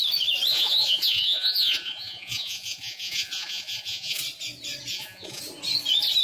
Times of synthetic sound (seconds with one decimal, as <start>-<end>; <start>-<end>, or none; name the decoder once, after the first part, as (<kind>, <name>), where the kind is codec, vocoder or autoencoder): 0.5-4.2 (vocoder, Vocos); 4.9-5.4